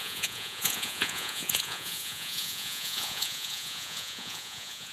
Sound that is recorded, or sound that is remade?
remade